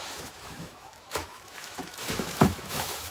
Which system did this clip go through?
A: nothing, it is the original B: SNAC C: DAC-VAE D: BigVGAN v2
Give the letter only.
C